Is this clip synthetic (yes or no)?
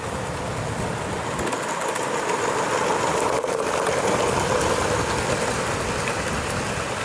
no